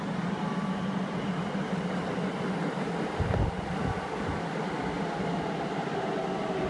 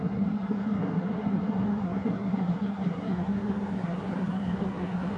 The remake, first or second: second